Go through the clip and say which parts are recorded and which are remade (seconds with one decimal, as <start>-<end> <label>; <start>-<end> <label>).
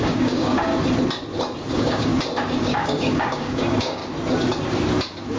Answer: 0.0-0.7 remade; 0.7-1.7 recorded; 1.7-2.1 remade; 2.1-2.6 recorded; 2.6-4.0 remade; 4.0-5.4 recorded